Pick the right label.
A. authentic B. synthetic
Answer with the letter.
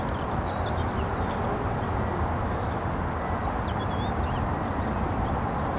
A